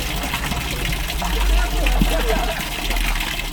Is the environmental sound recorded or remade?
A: recorded